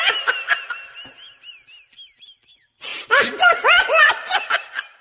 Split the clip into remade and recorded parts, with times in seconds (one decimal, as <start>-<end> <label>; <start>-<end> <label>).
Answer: 0.0-2.9 recorded; 2.9-4.1 remade; 4.1-5.0 recorded